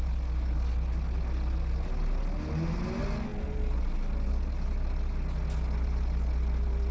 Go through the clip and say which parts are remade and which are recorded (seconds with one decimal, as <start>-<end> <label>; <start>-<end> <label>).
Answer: 0.0-6.9 recorded